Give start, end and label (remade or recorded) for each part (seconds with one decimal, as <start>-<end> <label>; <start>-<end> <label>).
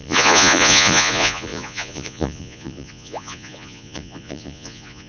0.0-5.1 remade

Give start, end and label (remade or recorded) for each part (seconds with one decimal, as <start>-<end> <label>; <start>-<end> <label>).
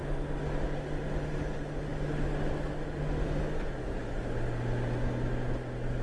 0.0-6.0 recorded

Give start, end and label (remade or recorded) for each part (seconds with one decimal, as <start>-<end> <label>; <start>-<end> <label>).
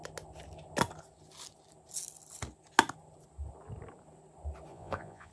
0.0-4.7 recorded; 4.7-5.3 remade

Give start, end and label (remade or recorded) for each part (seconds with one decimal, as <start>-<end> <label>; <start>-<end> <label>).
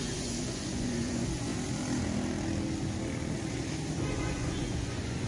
0.0-1.5 remade; 1.5-4.0 recorded; 4.0-5.3 remade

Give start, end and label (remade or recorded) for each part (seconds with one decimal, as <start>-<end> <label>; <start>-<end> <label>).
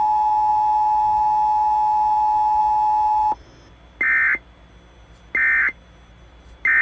0.0-6.8 recorded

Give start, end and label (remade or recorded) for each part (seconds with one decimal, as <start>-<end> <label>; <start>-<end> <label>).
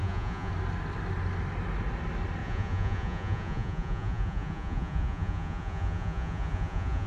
0.0-0.5 remade; 0.5-2.4 recorded; 2.4-7.1 remade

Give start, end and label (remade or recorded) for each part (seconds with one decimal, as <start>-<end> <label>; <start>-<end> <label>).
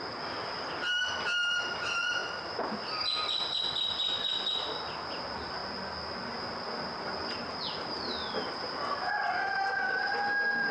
0.0-10.7 recorded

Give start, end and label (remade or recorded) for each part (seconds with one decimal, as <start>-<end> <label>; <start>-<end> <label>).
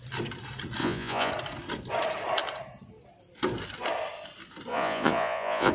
0.0-0.8 recorded; 0.8-1.3 remade; 1.3-4.7 recorded; 4.7-5.7 remade